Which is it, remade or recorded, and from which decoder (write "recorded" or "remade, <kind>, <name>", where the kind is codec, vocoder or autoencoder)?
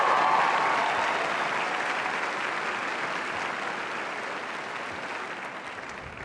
recorded